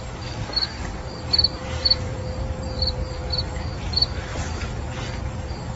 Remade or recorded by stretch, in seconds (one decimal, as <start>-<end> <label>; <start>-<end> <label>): 0.0-4.3 remade; 4.3-5.8 recorded